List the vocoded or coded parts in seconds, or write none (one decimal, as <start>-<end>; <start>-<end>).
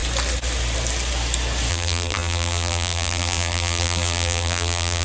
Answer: 1.7-5.0